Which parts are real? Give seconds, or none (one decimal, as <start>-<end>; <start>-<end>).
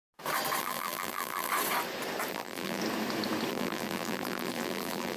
0.0-0.6; 1.5-2.3; 2.8-3.5